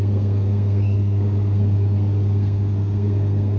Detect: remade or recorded remade